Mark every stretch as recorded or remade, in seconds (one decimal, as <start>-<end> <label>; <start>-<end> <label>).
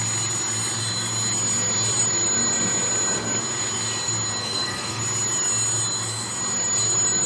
0.0-4.4 recorded; 4.4-5.0 remade; 5.0-7.3 recorded